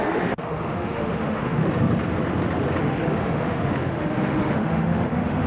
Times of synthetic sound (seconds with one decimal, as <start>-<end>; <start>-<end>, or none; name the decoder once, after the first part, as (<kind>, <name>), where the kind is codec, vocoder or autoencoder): 0.0-1.6 (autoencoder, DAC-VAE); 2.8-5.5